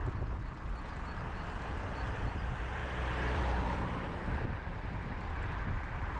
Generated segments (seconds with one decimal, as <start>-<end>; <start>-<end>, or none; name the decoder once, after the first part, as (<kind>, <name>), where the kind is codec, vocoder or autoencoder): none